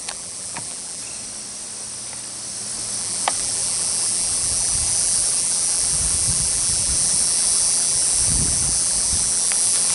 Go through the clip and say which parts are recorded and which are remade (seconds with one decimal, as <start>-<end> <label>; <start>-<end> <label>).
0.0-1.0 remade; 1.0-3.0 recorded; 3.0-9.9 remade